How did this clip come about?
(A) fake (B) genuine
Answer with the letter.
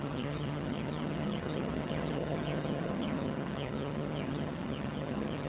A